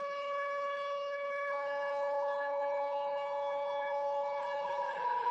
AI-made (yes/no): yes